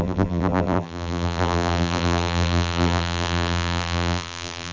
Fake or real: fake